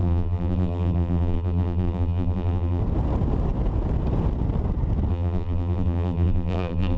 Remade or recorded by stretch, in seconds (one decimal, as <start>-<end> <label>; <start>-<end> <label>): 0.0-2.8 remade; 2.8-5.1 recorded; 5.1-7.0 remade